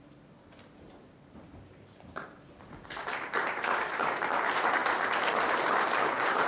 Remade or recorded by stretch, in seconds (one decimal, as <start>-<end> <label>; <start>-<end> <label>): 0.0-4.8 remade; 4.8-6.0 recorded; 6.0-6.5 remade